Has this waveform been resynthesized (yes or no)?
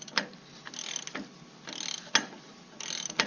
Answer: no